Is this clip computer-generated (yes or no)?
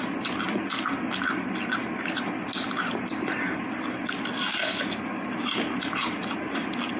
no